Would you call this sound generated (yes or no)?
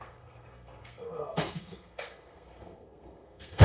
yes